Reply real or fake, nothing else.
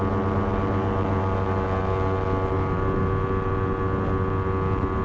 real